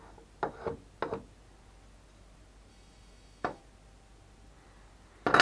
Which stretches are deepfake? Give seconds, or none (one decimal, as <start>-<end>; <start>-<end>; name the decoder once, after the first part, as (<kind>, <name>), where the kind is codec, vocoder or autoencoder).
2.7-3.6 (autoencoder, DAC-VAE)